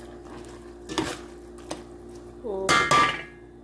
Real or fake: real